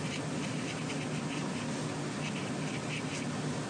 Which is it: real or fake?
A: real